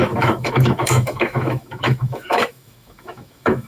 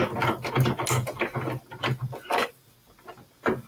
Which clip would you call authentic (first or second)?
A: second